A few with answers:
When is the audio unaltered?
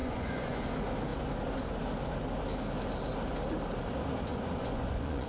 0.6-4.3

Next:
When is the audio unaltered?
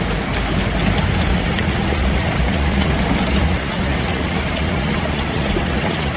0.0-1.3; 2.9-3.4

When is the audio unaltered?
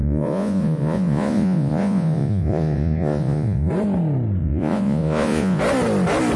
3.7-4.4; 5.6-6.4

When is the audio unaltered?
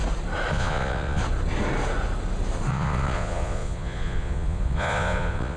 0.0-0.5; 1.2-2.7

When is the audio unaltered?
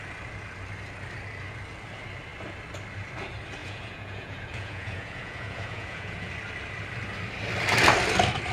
0.0-3.6; 6.3-8.5